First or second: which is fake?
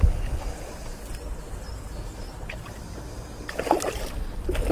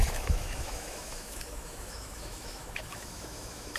second